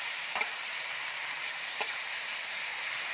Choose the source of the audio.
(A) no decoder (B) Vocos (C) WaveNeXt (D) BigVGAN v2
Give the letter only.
D